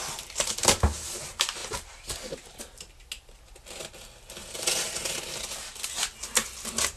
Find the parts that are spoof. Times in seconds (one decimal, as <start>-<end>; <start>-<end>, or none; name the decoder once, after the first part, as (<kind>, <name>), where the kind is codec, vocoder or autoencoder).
none

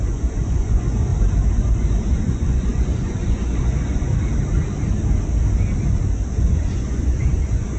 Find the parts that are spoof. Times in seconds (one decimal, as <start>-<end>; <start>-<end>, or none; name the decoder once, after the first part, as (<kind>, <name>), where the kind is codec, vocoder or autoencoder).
0.0-1.1 (vocoder, Vocos); 2.0-4.1; 6.3-7.8

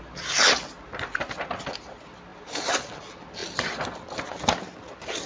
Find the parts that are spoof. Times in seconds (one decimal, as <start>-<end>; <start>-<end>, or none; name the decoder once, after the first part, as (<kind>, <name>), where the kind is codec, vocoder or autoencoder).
none

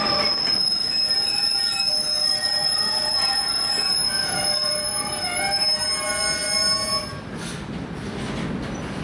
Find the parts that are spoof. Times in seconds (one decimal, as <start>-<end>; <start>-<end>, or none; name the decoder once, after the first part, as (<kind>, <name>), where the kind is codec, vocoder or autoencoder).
2.6-4.9 (vocoder, Vocos)

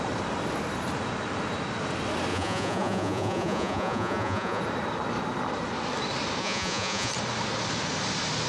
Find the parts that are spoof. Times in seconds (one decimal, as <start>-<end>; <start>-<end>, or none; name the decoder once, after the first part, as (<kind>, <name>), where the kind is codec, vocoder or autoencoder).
2.3-4.6 (vocoder, Vocos); 6.4-7.1

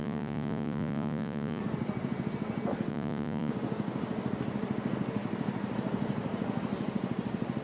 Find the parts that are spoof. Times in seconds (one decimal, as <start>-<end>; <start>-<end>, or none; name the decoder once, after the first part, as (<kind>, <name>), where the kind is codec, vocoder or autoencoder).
0.0-1.6 (vocoder, Vocos); 2.9-3.5

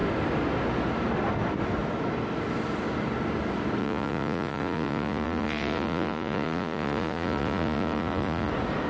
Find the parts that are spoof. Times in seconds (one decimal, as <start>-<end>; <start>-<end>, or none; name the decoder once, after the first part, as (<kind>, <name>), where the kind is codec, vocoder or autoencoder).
3.8-8.5 (vocoder, Vocos)

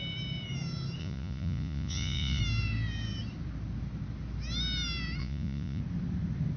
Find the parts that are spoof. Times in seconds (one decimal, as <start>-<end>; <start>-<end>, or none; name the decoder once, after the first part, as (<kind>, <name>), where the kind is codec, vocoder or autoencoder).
1.0-2.4 (vocoder, Vocos); 5.2-5.8